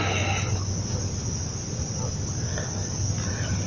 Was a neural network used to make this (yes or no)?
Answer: no